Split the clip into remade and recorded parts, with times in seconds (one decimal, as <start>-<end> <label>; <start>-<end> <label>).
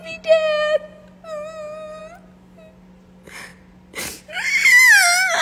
0.0-5.4 recorded